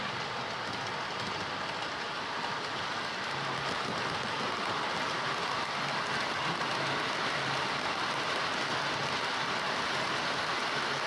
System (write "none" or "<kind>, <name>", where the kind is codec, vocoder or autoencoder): none